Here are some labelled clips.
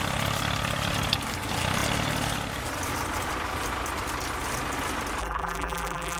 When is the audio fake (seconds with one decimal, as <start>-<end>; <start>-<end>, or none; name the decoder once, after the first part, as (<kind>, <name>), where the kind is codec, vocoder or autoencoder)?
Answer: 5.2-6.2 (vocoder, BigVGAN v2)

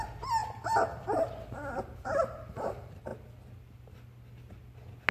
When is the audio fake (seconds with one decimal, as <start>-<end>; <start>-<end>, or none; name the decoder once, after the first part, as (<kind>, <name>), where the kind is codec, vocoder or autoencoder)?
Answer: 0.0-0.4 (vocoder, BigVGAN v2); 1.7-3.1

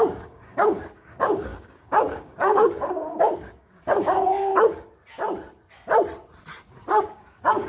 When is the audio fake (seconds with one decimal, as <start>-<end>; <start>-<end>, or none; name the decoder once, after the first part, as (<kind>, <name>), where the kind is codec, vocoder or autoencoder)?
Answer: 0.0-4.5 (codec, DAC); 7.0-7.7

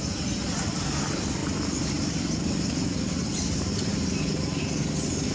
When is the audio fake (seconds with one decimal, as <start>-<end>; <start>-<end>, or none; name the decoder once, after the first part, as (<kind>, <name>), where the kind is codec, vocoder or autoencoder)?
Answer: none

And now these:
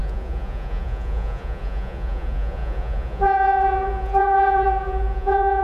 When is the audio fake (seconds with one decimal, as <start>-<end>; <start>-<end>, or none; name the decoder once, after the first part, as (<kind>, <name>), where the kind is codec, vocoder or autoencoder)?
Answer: 0.0-5.6 (vocoder, Vocos)

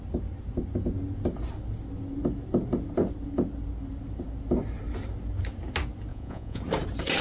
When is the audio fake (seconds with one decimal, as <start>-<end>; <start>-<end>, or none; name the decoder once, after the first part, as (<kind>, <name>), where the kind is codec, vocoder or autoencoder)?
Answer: 6.1-6.6 (vocoder, Vocos)